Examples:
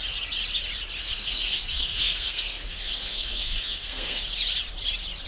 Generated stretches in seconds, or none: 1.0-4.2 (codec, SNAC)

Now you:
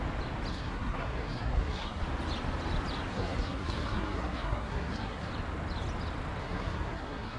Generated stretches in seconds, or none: 0.5-2.0 (codec, SNAC); 3.1-5.3; 6.4-7.4

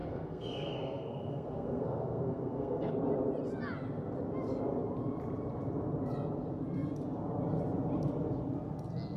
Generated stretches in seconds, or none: 0.0-2.9 (codec, SNAC)

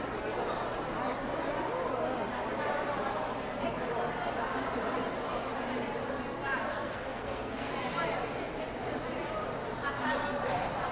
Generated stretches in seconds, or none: 6.7-7.7 (codec, SNAC)

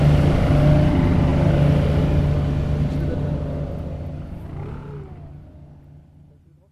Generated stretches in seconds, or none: none

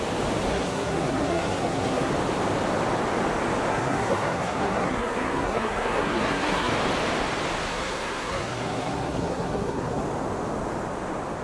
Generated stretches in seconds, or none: 0.5-2.1 (codec, SNAC); 3.7-6.7; 7.7-10.0

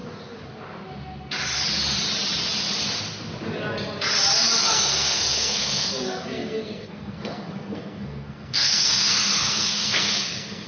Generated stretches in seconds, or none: 4.6-10.7 (codec, SNAC)